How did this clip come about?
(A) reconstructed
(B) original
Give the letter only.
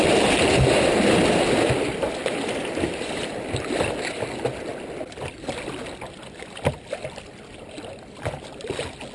B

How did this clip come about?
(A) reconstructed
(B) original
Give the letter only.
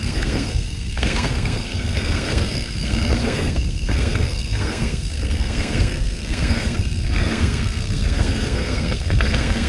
A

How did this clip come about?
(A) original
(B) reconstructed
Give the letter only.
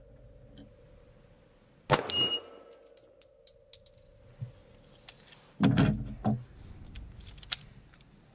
A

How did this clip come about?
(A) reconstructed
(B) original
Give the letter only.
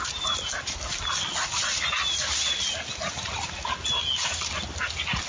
B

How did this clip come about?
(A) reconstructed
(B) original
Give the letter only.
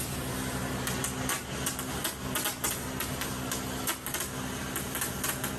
B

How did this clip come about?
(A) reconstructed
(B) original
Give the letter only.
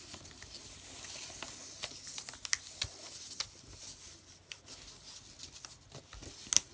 B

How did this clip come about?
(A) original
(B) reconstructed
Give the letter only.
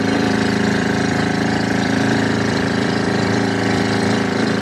B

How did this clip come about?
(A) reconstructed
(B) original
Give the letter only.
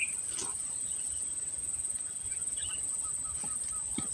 B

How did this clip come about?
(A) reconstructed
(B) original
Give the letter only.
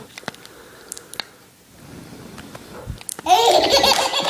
B